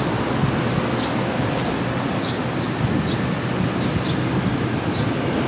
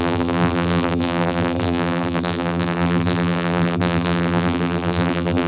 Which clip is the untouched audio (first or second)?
first